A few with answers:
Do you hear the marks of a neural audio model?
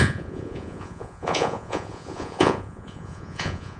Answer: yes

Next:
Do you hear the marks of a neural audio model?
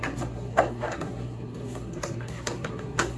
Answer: yes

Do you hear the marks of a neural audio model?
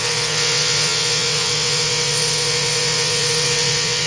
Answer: yes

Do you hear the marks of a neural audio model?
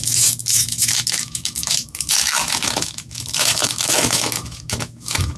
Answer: yes